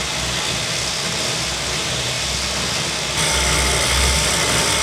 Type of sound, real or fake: real